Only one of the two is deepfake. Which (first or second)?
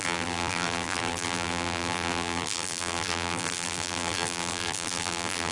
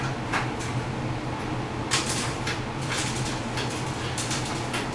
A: first